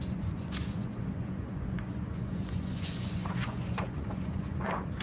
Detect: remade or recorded remade